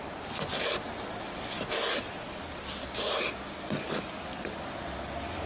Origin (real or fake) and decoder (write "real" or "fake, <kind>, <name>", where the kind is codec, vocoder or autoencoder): real